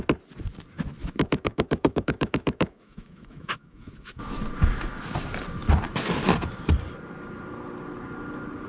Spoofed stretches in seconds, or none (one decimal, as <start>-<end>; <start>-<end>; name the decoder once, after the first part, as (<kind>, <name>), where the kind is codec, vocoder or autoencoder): 1.0-4.4 (autoencoder, DAC-VAE)